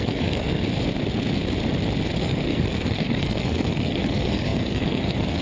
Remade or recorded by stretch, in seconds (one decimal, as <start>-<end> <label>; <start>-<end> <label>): 0.0-0.6 remade; 0.6-2.2 recorded; 2.2-5.4 remade